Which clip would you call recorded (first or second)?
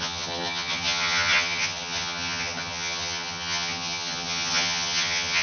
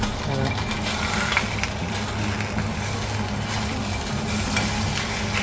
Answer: second